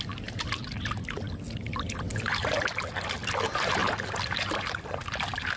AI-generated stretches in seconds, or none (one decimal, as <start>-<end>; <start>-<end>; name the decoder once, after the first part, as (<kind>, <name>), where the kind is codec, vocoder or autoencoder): none